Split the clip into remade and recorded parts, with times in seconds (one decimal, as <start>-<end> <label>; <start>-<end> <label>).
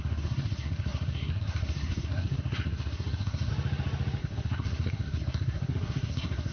0.0-3.5 remade; 3.5-4.2 recorded; 4.2-6.5 remade